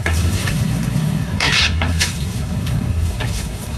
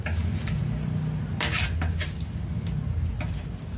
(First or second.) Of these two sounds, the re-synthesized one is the first